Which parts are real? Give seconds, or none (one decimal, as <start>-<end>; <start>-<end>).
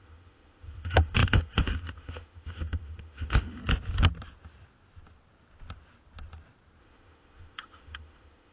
3.6-6.8